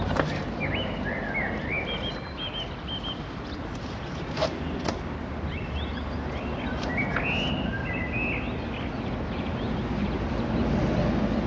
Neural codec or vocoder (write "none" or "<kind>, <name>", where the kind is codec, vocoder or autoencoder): none